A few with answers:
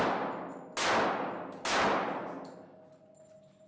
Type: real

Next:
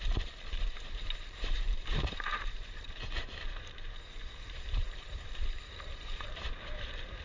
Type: fake